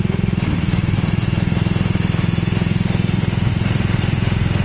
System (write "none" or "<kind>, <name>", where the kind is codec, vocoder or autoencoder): none